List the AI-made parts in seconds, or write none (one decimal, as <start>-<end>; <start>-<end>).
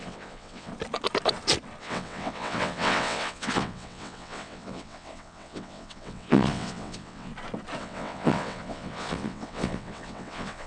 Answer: 0.0-0.7; 1.8-7.3; 7.8-10.7